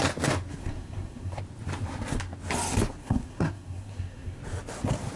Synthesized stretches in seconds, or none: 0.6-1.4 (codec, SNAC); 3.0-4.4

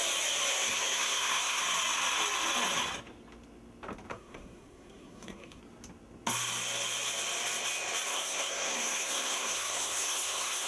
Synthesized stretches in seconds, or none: 0.5-1.6 (codec, SNAC); 4.1-5.6; 8.1-10.7

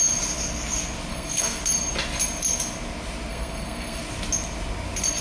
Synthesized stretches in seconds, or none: 1.1-1.6 (codec, SNAC); 3.3-4.0

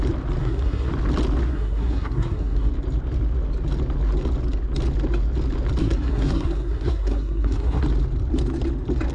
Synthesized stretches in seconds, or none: 0.4-0.9 (codec, SNAC); 1.5-2.7; 5.8-7.8